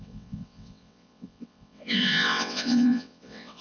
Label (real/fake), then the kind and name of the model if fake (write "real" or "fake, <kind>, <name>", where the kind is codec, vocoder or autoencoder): fake, vocoder, WaveNeXt